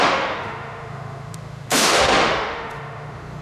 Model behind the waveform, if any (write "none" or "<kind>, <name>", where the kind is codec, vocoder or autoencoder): autoencoder, DAC-VAE